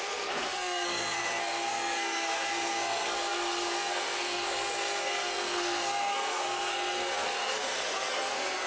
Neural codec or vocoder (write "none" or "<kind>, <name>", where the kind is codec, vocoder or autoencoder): codec, SNAC